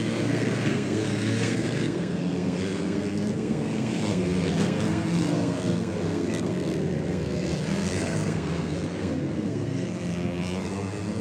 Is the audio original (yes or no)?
no